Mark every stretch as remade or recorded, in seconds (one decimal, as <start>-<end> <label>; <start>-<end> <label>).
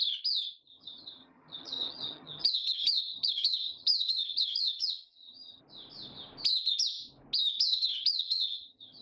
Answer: 0.0-0.7 recorded; 0.7-5.6 remade; 5.6-7.7 recorded; 7.7-9.0 remade